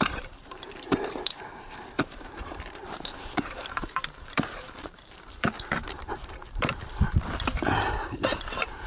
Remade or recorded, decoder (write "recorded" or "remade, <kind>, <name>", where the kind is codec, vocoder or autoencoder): remade, vocoder, BigVGAN v2